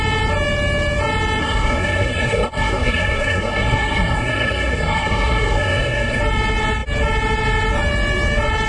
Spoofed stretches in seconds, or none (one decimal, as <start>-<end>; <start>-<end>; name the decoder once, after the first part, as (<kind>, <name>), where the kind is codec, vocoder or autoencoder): 1.4-6.2 (codec, SNAC)